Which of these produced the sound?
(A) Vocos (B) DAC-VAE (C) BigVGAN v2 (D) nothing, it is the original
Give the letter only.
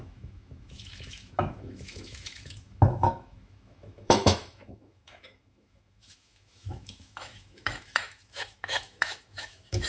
B